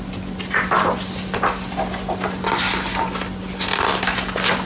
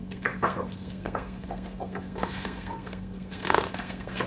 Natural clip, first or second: first